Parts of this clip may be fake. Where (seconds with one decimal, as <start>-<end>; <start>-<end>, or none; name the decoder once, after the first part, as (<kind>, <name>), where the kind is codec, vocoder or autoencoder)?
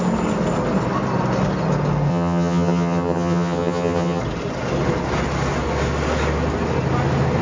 2.1-4.2 (vocoder, HiFi-GAN)